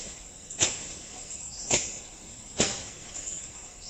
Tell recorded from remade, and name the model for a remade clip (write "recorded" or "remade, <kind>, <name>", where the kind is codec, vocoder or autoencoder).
remade, codec, SNAC